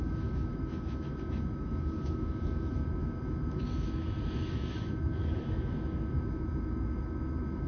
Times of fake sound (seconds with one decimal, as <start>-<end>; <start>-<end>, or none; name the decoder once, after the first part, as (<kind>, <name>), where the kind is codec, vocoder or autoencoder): 0.0-7.7 (autoencoder, DAC-VAE)